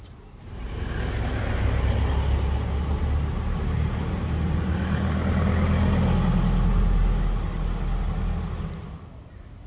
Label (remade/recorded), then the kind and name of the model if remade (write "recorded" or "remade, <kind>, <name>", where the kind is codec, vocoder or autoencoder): recorded